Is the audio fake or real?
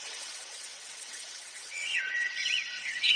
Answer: fake